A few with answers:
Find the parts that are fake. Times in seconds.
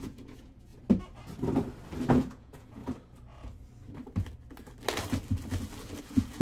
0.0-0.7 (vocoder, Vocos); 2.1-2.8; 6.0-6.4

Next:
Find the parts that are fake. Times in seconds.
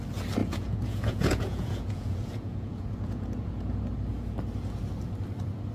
0.4-3.8 (vocoder, Vocos)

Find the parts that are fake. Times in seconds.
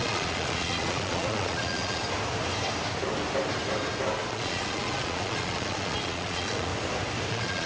0.0-2.0 (vocoder, Vocos); 4.3-6.7; 7.3-7.7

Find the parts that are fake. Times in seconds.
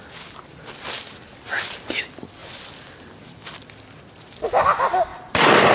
1.1-1.7 (vocoder, BigVGAN v2); 5.1-5.7